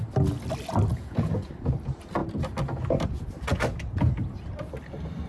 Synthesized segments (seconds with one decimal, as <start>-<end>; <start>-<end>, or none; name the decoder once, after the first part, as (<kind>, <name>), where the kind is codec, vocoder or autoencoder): 0.9-1.5 (vocoder, Vocos)